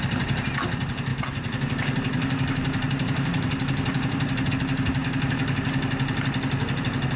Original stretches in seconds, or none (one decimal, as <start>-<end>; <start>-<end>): 0.0-1.1; 4.5-7.2